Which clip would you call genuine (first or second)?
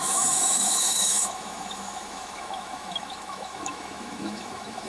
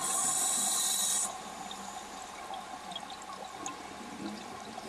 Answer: second